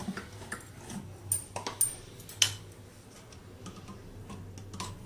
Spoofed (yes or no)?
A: no